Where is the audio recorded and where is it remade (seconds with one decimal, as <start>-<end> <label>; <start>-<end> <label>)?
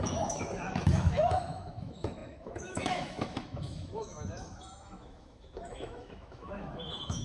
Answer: 0.0-7.2 remade